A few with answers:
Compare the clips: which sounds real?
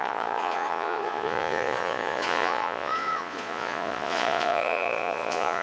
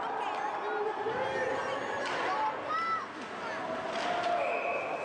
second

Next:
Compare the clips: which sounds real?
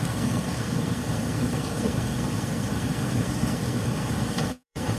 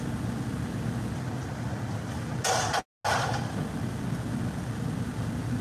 second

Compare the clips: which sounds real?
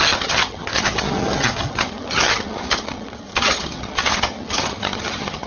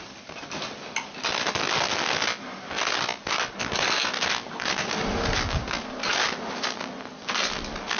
second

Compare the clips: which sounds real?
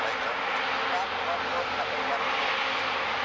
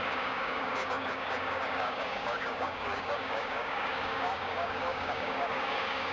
first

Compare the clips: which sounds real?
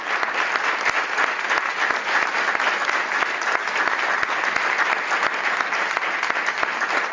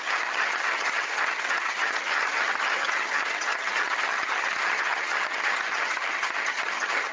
first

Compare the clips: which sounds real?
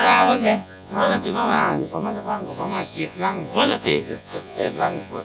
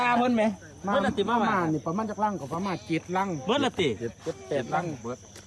second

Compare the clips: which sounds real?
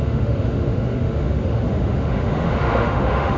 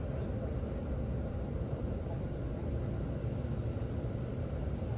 second